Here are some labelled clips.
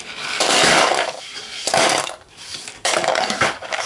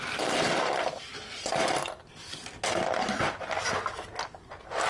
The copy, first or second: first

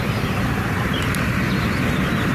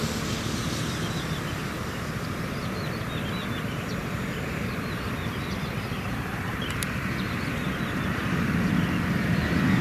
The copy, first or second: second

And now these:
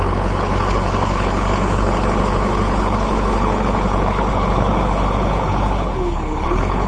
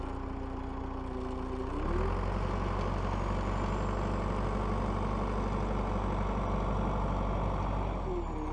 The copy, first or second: first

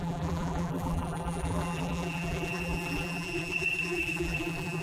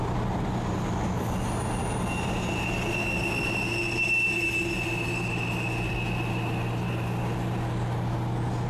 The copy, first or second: first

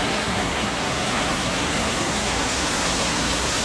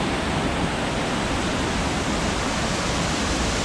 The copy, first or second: first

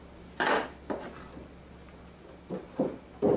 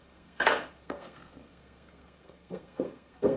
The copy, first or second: second